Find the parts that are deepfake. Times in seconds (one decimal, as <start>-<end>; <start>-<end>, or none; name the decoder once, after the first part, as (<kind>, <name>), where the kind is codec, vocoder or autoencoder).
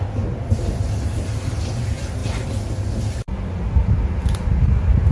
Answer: none